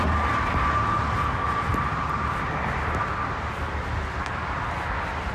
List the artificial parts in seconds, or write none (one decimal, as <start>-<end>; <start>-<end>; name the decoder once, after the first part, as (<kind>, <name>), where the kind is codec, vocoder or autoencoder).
1.7-2.2 (vocoder, BigVGAN v2)